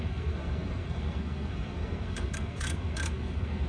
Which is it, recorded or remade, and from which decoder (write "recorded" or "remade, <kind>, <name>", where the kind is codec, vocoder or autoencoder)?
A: remade, codec, SNAC